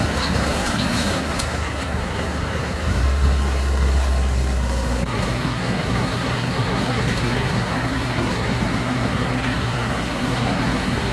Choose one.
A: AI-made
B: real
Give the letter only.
A